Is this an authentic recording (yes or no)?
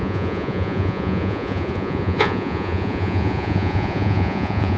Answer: no